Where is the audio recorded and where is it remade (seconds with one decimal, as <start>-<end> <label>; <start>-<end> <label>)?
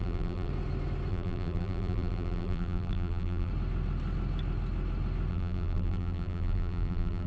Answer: 0.0-0.5 remade; 0.5-1.1 recorded; 1.1-3.5 remade; 3.5-5.3 recorded; 5.3-7.3 remade